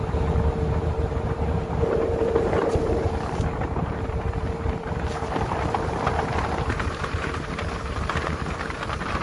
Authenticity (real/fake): fake